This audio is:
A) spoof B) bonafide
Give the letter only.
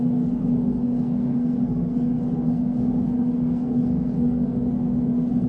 A